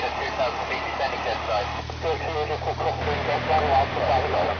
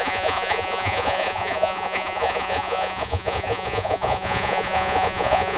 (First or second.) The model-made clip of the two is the second